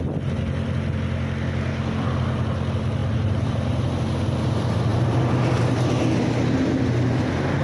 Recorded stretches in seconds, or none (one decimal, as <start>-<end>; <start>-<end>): 0.0-3.0; 3.8-7.6